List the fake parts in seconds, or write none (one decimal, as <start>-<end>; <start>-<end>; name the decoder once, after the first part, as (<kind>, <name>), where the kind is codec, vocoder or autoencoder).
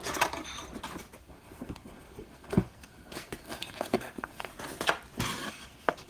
1.2-4.5 (codec, SNAC); 5.5-6.1